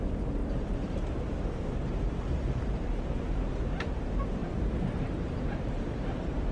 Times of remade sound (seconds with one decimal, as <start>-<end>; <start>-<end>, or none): 0.4-3.5; 4.4-6.5